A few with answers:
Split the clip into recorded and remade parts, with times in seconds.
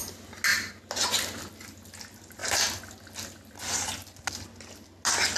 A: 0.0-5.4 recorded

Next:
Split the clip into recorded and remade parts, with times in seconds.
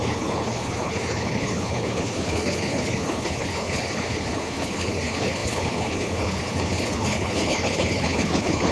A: 0.0-8.7 remade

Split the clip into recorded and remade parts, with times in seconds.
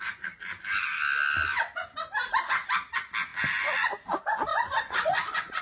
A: 0.0-4.5 recorded; 4.5-5.6 remade